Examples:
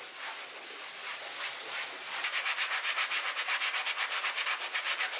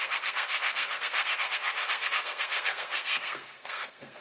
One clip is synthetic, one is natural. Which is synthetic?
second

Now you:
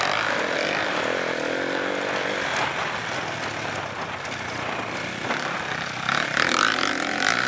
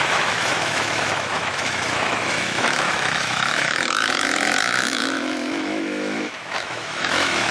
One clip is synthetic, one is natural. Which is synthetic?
second